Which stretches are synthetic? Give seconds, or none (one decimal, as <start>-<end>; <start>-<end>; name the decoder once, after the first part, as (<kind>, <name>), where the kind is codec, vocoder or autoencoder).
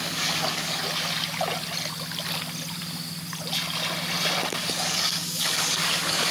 0.0-0.8 (codec, DAC); 4.6-6.3